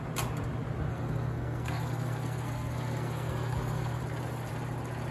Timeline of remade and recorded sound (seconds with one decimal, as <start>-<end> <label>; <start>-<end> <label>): 0.0-0.9 recorded; 0.9-4.0 remade; 4.0-5.1 recorded